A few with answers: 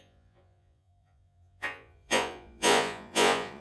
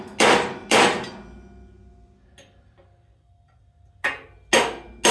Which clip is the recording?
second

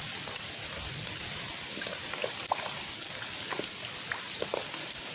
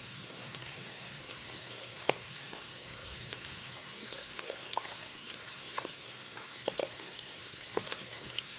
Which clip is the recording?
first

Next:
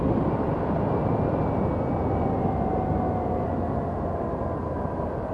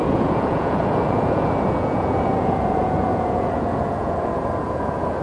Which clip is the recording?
first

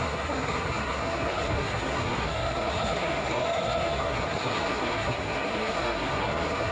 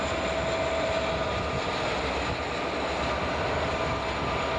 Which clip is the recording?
second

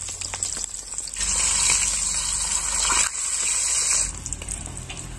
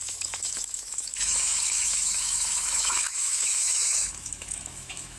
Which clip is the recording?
first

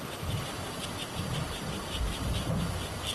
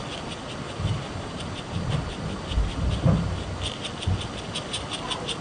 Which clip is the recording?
second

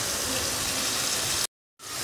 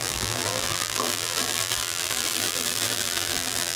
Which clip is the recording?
first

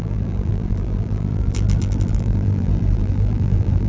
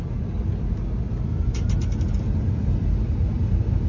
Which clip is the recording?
second